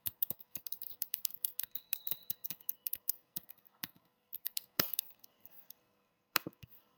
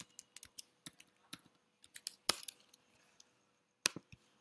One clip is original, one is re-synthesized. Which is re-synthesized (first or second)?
first